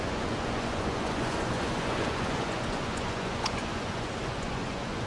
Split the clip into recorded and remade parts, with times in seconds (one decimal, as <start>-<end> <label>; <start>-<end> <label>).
0.0-5.1 remade